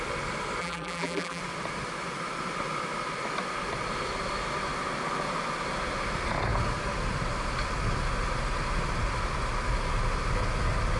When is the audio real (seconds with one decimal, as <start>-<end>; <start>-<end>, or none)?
0.0-0.6; 1.4-11.0